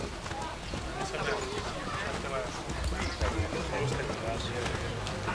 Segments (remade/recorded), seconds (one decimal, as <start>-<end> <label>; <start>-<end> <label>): 0.0-5.3 recorded